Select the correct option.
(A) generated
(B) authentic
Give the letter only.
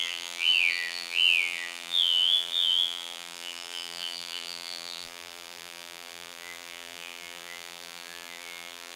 A